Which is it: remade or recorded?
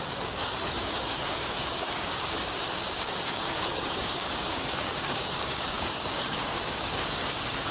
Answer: remade